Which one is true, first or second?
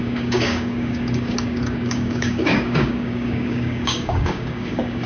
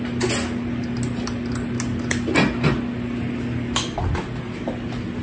second